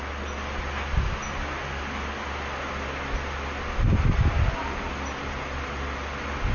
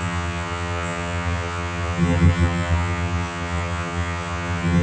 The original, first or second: first